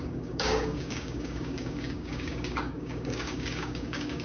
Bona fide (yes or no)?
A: no